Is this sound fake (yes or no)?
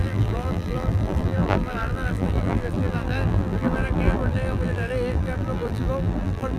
yes